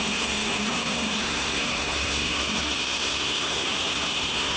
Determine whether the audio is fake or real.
fake